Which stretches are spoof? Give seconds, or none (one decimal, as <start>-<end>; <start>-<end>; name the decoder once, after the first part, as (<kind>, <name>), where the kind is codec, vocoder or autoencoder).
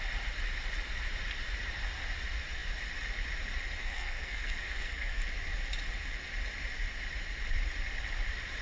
3.8-5.2 (codec, SNAC)